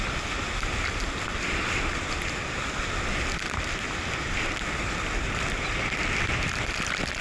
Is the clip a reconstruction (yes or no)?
yes